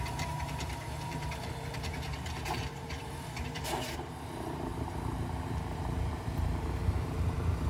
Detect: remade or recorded remade